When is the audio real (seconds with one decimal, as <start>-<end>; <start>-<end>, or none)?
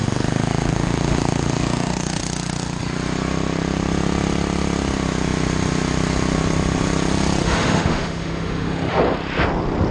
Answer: 2.2-7.4; 9.0-9.9